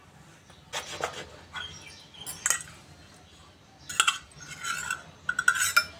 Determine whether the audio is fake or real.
real